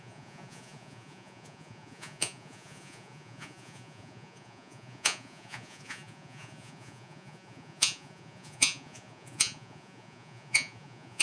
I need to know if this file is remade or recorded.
remade